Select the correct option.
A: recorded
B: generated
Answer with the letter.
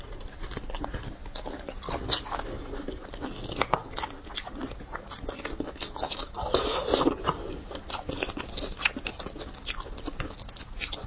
A